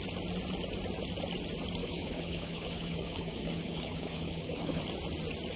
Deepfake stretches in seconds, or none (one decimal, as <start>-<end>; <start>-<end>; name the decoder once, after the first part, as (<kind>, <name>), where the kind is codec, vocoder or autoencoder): 1.8-4.8 (codec, DAC)